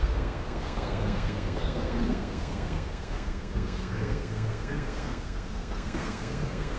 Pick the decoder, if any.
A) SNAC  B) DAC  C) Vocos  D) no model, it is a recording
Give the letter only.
A